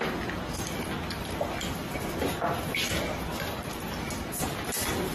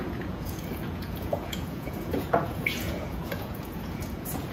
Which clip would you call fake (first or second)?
second